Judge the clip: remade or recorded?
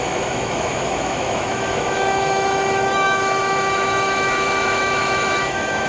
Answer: remade